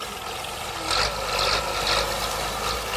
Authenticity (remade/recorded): recorded